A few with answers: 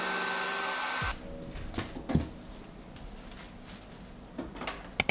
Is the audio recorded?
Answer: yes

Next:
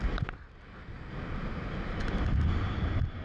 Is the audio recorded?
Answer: yes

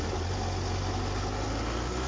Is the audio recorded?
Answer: yes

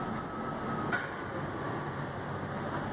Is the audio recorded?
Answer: yes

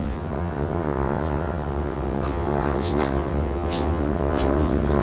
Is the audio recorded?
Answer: no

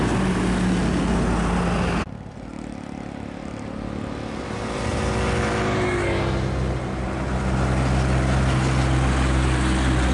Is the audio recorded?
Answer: yes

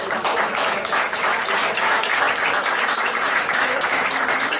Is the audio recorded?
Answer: no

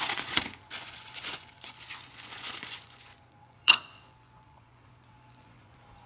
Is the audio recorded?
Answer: no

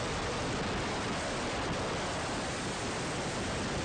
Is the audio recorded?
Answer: yes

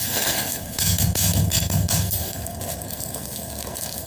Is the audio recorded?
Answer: no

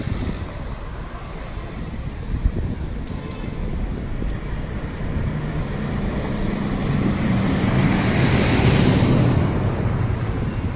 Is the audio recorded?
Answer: no